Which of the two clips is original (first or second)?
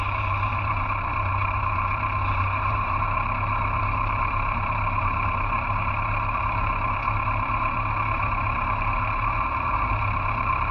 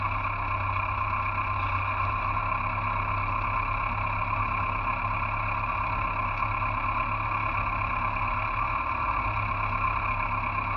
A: second